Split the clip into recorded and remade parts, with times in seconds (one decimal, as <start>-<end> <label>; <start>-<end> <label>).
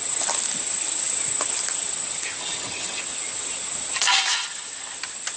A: 0.0-2.4 recorded; 2.4-3.0 remade; 3.0-5.4 recorded